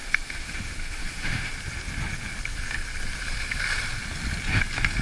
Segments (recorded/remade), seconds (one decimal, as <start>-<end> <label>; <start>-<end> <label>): 0.0-1.5 remade; 1.5-5.0 recorded